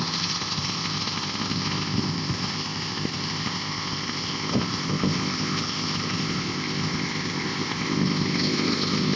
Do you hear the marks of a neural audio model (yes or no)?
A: yes